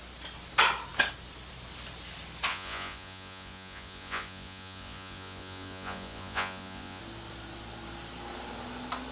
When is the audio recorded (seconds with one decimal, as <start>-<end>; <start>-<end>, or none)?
0.0-2.5; 7.0-9.1